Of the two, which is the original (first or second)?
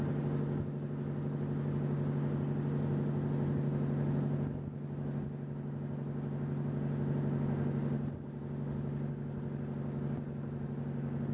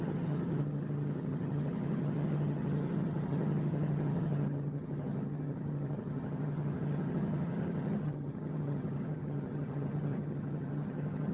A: first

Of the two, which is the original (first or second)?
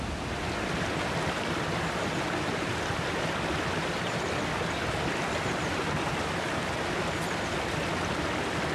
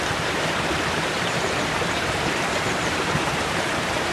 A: first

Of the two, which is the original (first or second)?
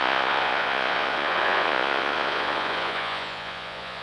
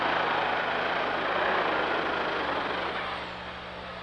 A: second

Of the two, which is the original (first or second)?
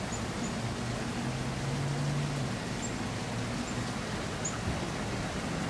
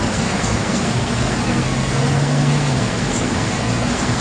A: first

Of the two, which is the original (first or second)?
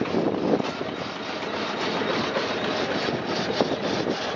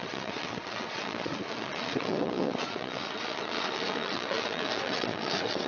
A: first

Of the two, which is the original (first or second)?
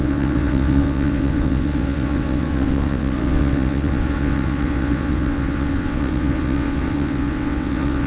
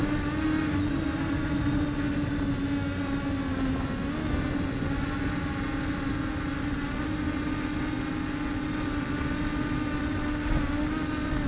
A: second